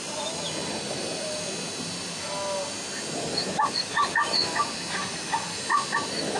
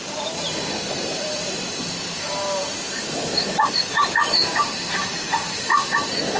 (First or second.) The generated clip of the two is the second